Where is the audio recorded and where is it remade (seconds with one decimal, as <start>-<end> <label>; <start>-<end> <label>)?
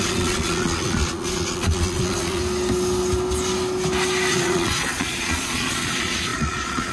0.0-2.4 remade; 2.4-4.3 recorded; 4.3-6.9 remade